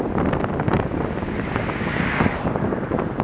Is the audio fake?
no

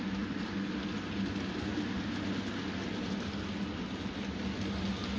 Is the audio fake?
no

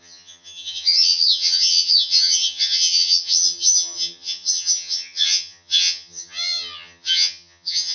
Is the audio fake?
yes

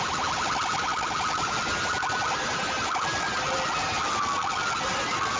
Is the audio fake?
no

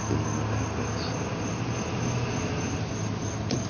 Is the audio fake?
no